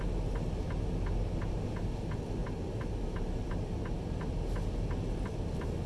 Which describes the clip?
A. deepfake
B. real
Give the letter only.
B